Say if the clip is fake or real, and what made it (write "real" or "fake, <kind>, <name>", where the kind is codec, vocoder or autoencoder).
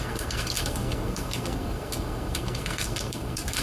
fake, codec, SNAC